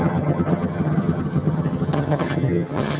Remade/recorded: remade